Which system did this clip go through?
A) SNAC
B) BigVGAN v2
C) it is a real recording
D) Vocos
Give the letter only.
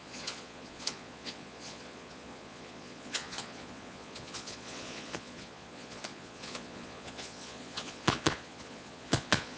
D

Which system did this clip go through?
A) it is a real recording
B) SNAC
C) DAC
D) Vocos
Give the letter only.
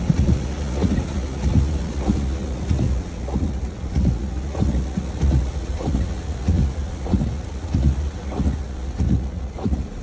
D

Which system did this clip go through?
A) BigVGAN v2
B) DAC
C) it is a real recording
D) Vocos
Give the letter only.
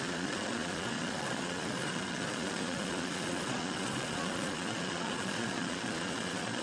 D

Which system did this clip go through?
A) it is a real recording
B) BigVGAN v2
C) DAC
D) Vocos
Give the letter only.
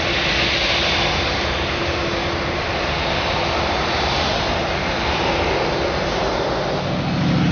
A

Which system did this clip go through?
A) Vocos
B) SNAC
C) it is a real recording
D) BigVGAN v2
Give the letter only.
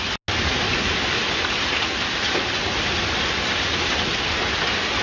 C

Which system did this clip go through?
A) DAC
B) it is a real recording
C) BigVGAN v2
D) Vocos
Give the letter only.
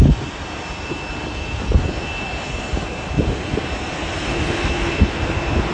B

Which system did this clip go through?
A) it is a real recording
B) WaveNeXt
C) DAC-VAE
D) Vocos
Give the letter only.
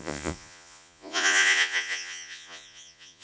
D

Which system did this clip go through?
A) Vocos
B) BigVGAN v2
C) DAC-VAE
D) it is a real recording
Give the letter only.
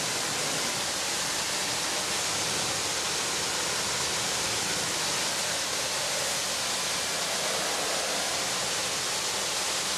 D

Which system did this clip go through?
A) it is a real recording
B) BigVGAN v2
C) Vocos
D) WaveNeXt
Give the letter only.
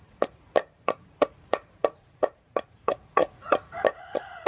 C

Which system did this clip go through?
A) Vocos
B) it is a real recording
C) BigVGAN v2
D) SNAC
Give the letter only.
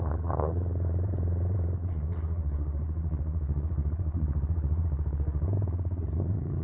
A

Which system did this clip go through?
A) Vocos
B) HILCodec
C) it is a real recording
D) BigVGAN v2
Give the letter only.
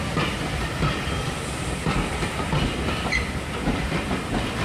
C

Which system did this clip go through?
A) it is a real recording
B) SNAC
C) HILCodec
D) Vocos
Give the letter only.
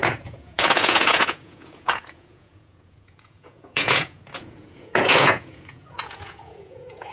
D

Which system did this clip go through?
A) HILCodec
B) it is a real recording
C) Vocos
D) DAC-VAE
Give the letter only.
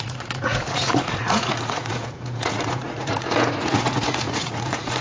C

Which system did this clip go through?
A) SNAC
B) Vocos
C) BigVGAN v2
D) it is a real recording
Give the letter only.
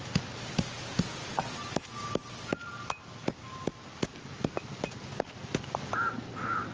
D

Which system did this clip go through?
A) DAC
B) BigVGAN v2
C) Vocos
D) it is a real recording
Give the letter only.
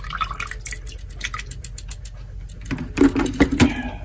D